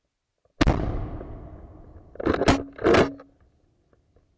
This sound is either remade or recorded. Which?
recorded